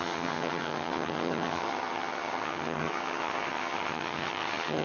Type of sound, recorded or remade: remade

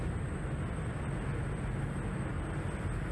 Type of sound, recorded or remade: recorded